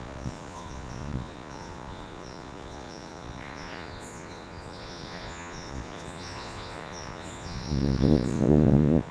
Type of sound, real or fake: fake